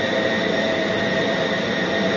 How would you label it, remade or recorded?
remade